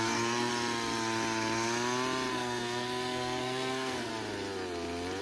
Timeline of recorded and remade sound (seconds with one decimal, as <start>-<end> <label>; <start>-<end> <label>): 0.0-0.5 remade; 0.5-2.3 recorded; 2.3-4.1 remade; 4.1-5.2 recorded